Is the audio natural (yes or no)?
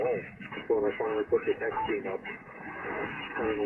no